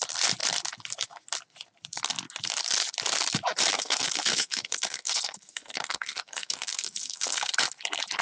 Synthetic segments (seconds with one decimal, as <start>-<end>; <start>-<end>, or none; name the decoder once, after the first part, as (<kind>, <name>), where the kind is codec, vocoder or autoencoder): 3.7-7.5 (codec, SNAC)